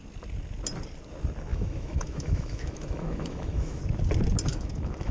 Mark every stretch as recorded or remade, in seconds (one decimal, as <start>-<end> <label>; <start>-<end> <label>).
0.0-1.5 recorded; 1.5-3.8 remade; 3.8-4.5 recorded; 4.5-5.1 remade